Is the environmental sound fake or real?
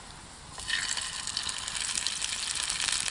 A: real